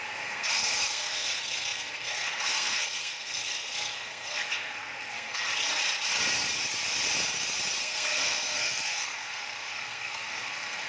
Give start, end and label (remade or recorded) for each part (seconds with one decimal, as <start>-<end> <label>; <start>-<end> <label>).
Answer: 0.0-5.5 remade; 5.5-7.8 recorded; 7.8-10.9 remade